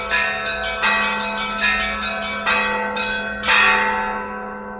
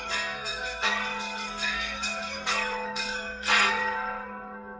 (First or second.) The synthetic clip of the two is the second